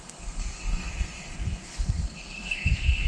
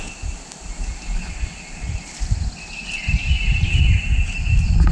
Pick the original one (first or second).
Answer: second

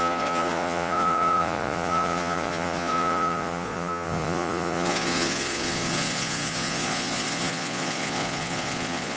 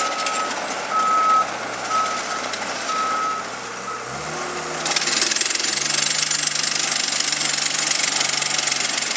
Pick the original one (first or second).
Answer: second